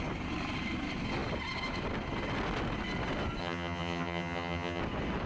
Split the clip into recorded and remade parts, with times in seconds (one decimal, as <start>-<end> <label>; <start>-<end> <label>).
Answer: 0.0-3.4 recorded; 3.4-4.8 remade; 4.8-5.3 recorded